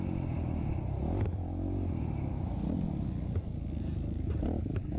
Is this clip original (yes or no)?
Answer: yes